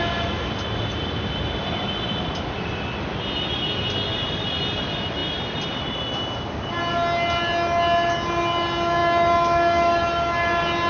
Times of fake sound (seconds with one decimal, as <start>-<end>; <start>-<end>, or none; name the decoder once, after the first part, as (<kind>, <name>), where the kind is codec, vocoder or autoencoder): none